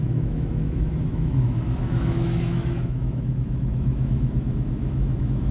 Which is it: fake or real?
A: fake